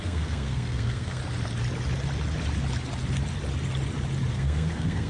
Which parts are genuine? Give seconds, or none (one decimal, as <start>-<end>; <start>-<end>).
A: 1.2-4.3